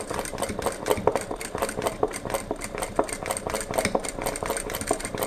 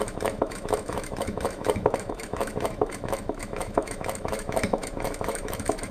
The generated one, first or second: second